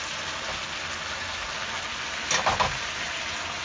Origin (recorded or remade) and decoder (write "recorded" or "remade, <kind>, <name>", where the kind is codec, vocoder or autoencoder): recorded